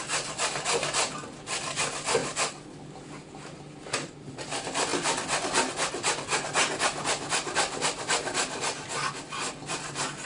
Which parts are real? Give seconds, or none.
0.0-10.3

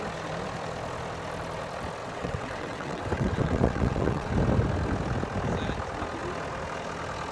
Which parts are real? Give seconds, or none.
0.0-2.0; 4.3-7.3